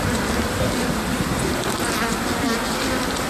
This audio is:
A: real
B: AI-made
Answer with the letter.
A